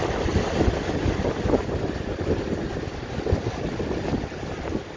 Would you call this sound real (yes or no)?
yes